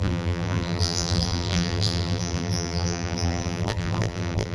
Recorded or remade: remade